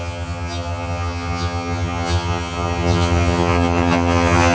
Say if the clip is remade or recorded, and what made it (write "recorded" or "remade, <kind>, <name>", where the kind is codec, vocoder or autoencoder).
remade, vocoder, HiFi-GAN